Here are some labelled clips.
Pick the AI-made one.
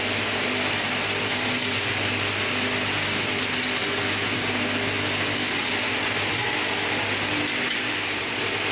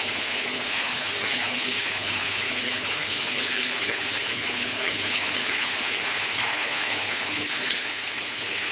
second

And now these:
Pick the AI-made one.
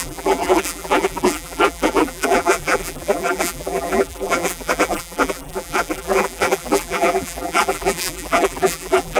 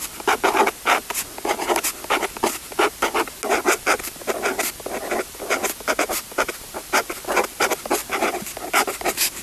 first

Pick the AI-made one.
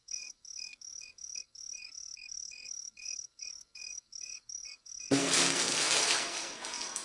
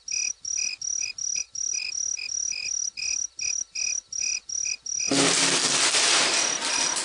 first